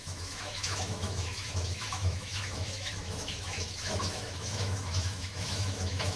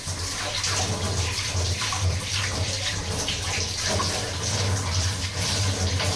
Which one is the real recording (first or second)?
second